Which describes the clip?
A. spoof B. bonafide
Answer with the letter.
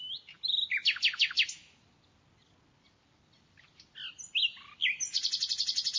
B